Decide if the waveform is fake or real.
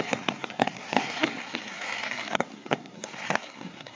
fake